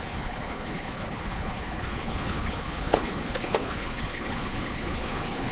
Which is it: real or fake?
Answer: fake